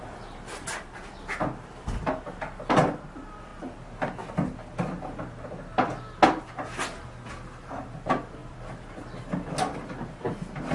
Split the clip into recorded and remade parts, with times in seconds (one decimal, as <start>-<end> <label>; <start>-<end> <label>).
0.0-8.4 recorded; 8.4-8.9 remade; 8.9-10.7 recorded